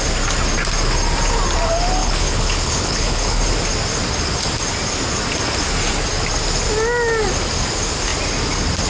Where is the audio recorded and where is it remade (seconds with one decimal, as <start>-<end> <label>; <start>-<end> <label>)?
0.0-2.0 recorded; 2.0-3.4 remade; 3.4-8.9 recorded